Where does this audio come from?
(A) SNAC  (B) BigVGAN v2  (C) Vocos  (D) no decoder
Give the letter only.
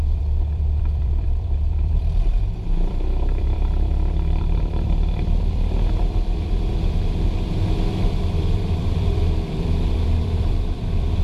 B